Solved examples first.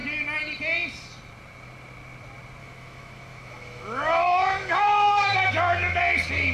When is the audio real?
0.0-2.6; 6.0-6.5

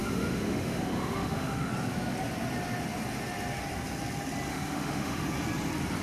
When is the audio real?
1.7-4.5; 5.2-6.0

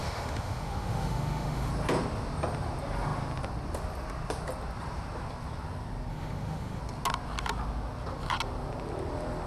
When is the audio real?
1.7-6.1; 6.8-9.5

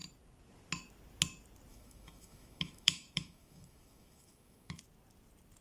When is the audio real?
0.0-1.7; 4.8-5.6

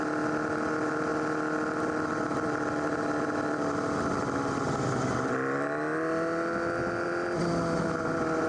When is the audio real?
0.0-8.5

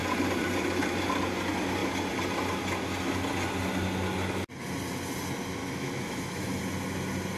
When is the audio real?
0.0-5.6; 6.6-7.4

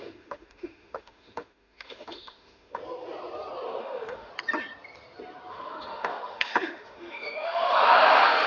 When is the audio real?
2.8-3.8; 4.3-5.5